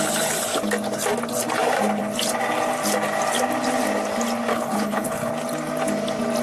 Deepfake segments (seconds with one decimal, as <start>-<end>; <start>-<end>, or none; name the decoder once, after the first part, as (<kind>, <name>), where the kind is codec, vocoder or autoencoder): 4.5-5.3 (codec, HILCodec)